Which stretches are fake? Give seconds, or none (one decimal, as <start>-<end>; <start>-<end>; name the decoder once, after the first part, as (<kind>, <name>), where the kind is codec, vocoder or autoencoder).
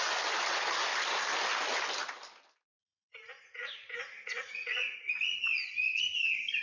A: 2.9-6.0 (vocoder, Vocos)